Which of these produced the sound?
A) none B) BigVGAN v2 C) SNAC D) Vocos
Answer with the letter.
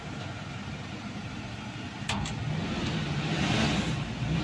A